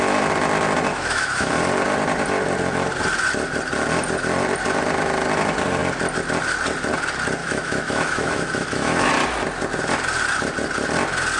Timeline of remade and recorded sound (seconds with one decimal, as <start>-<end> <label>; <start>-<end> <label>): 0.0-0.9 recorded; 0.9-1.5 remade; 1.5-7.4 recorded; 7.4-9.1 remade; 9.1-11.4 recorded